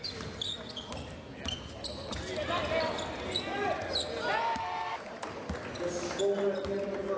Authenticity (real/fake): real